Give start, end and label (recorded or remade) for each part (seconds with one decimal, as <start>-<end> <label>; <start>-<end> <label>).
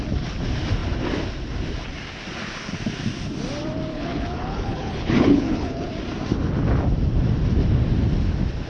0.0-3.9 recorded; 3.9-5.9 remade; 5.9-8.7 recorded